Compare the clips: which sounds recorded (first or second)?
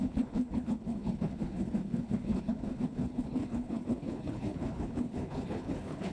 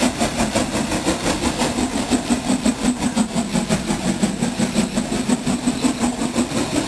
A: second